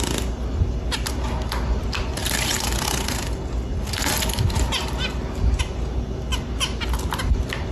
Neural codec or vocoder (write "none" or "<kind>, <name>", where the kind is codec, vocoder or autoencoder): none